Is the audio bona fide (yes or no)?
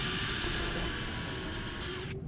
yes